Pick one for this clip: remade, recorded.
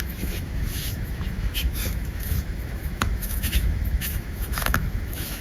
remade